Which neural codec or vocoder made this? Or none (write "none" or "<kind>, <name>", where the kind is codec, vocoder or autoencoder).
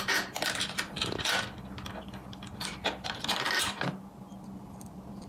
none